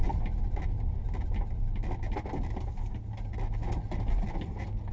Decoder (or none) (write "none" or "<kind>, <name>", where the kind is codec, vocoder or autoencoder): none